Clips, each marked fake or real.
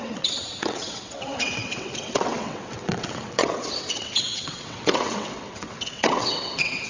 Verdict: fake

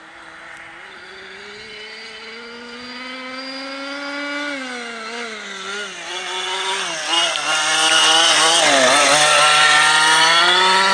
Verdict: real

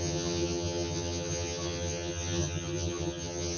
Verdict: fake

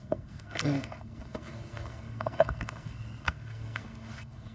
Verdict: fake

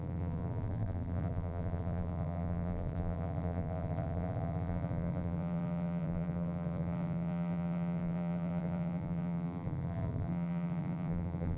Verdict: fake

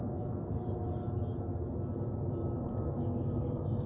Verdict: real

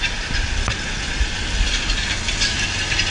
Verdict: real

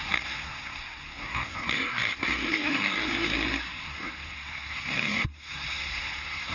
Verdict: fake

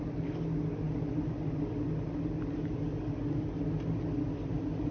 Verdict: real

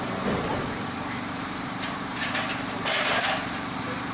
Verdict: fake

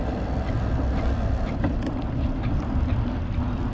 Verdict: real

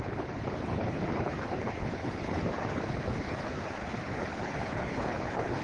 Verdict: fake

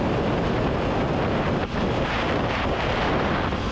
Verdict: real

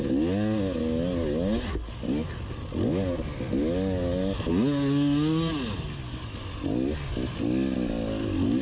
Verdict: real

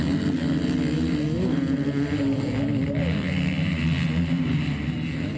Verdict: real